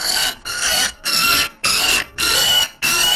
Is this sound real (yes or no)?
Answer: no